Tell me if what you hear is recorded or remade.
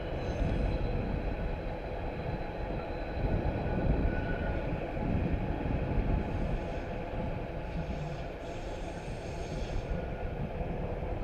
recorded